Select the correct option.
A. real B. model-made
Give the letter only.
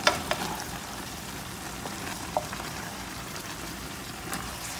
B